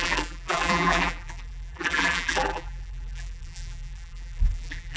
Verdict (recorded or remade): remade